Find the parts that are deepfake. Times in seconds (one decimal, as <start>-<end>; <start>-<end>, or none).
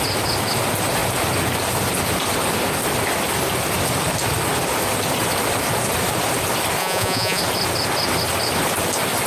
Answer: 6.8-7.4